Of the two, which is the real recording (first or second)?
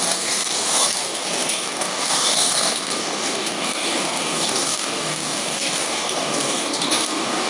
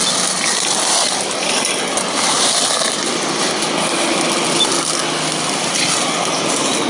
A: second